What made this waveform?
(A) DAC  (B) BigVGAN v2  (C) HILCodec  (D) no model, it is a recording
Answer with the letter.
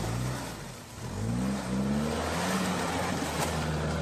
D